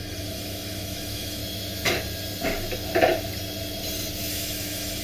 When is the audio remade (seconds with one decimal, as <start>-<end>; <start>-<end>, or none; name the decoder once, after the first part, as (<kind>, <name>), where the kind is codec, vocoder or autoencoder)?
0.0-1.4 (autoencoder, DAC-VAE); 4.3-5.0